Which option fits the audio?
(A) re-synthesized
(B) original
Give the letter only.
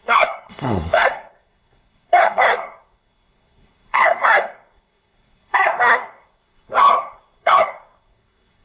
A